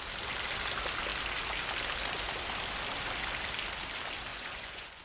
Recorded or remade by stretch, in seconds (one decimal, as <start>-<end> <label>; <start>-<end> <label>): 0.0-4.3 recorded; 4.3-5.0 remade